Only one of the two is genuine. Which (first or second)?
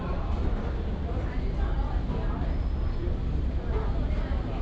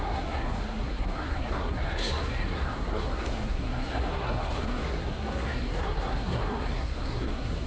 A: first